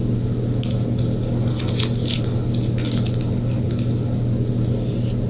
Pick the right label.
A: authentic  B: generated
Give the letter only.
A